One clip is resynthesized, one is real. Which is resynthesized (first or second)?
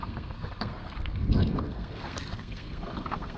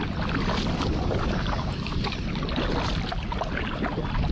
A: first